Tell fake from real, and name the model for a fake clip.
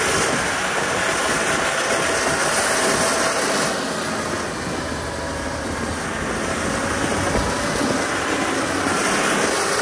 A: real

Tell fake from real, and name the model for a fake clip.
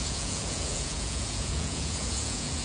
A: fake, vocoder, Vocos